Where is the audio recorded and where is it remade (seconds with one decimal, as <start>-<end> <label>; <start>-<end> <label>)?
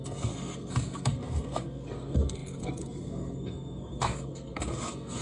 0.0-5.2 remade